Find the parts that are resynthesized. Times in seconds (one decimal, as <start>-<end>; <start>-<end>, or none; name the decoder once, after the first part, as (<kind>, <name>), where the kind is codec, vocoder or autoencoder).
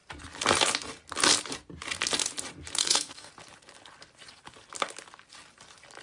2.8-3.3 (codec, SNAC)